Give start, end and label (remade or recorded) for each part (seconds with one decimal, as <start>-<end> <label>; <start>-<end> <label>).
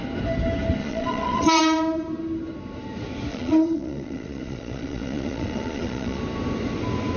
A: 0.0-0.8 recorded; 0.8-1.6 remade; 1.6-3.3 recorded; 3.3-6.2 remade; 6.2-7.2 recorded